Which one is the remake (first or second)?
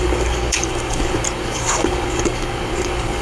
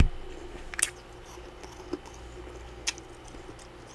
first